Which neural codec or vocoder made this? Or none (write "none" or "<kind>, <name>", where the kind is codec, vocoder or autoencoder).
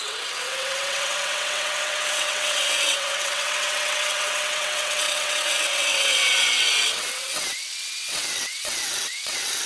vocoder, WaveNeXt